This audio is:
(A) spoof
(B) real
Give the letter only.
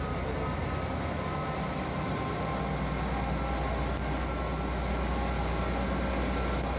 B